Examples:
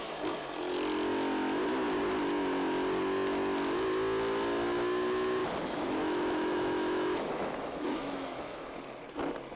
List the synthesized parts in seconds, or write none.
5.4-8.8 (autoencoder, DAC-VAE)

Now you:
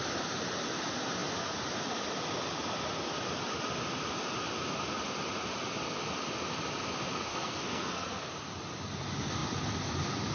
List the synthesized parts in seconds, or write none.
7.3-8.3 (codec, SNAC)